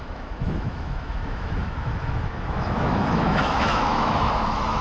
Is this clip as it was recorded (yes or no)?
no